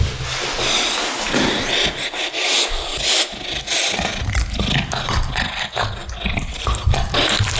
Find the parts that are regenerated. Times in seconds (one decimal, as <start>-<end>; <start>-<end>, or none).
none